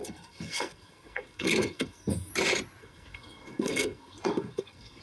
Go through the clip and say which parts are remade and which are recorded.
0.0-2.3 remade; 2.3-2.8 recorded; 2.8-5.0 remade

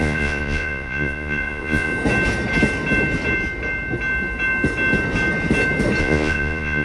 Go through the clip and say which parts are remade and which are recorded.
0.0-1.9 remade; 1.9-6.0 recorded; 6.0-6.8 remade

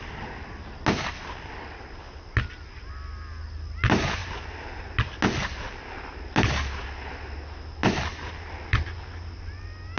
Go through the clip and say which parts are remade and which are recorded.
0.0-10.0 recorded